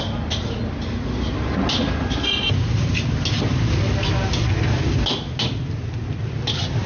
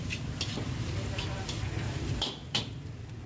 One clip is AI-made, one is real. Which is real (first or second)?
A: first